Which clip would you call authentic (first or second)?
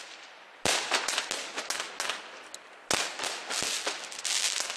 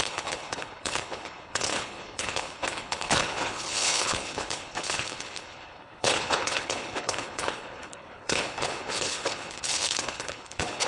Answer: first